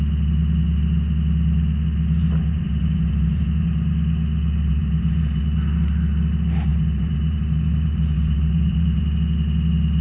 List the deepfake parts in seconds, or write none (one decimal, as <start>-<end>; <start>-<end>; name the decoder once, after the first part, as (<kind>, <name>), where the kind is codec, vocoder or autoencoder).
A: 2.2-3.9 (vocoder, BigVGAN v2); 4.7-5.4; 6.7-9.0